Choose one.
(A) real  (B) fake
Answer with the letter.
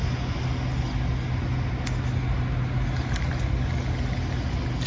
A